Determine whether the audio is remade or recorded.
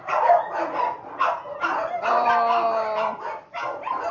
recorded